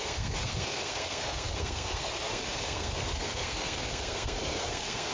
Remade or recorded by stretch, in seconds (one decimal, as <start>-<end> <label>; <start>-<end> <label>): 0.0-5.1 remade